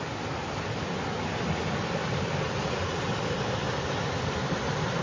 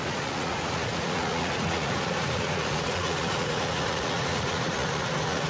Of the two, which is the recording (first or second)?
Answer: first